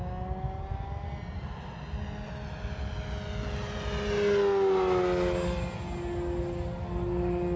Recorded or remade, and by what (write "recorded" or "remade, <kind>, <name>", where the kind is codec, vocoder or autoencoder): recorded